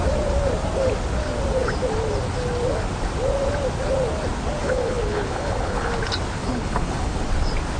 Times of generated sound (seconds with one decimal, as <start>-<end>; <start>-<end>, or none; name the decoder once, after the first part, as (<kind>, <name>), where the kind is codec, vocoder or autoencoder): 4.6-5.9 (codec, HILCodec); 6.4-7.2

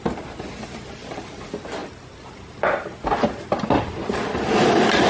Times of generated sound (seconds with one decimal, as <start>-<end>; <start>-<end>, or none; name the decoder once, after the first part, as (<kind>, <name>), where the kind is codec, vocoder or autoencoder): none

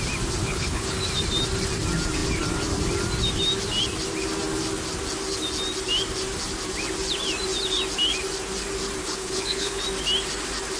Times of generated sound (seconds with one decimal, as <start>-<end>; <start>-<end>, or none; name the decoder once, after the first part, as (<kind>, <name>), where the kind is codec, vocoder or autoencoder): 0.4-1.0 (codec, HILCodec); 9.0-9.8

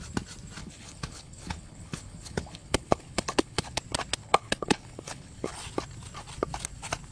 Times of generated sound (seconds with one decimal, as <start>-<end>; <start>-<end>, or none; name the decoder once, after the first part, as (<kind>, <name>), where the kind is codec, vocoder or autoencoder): 0.6-3.8 (codec, HILCodec); 4.2-5.5

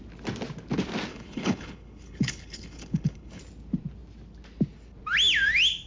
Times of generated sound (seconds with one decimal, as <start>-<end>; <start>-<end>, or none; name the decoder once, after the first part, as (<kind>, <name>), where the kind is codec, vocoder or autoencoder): 1.1-3.4 (codec, HILCodec)